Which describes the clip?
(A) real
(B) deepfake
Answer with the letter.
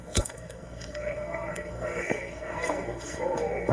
B